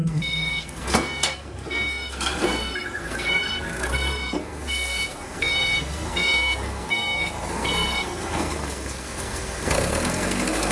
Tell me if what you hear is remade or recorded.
remade